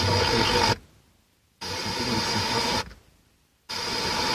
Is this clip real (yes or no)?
yes